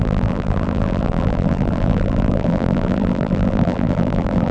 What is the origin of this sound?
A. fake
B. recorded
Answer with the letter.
A